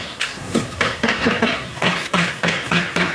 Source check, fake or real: fake